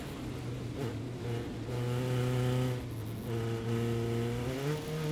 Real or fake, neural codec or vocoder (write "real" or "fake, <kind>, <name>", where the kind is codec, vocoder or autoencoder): real